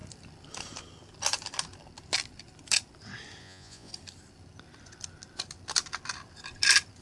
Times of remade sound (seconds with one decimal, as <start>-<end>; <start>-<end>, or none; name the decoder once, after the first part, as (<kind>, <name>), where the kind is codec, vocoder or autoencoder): 3.4-3.9 (vocoder, Vocos)